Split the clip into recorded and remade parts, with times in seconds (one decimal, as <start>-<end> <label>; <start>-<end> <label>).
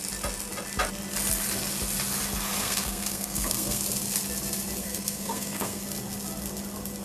0.0-2.6 recorded; 2.6-3.8 remade; 3.8-4.8 recorded; 4.8-5.8 remade; 5.8-7.0 recorded